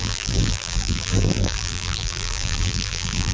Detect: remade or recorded remade